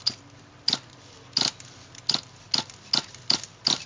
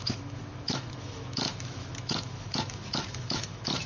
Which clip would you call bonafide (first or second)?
first